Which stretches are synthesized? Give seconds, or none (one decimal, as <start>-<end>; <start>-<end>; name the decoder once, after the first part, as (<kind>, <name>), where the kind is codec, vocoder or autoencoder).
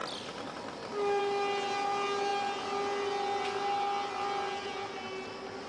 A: none